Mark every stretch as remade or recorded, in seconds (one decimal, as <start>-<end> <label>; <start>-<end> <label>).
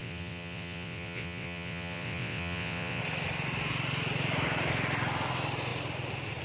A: 0.0-3.0 remade; 3.0-6.4 recorded